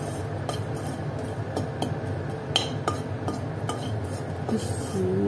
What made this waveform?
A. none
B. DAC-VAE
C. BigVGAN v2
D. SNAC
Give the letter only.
A